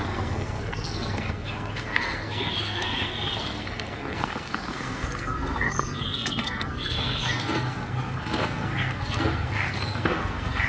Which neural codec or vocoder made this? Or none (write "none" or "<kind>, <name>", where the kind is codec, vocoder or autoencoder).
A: codec, SNAC